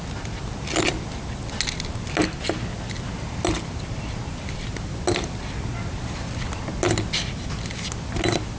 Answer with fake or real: real